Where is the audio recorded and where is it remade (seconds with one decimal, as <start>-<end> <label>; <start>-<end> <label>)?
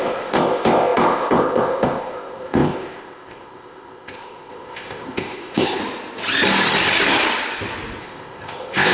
0.0-5.8 remade; 5.8-8.0 recorded; 8.0-8.9 remade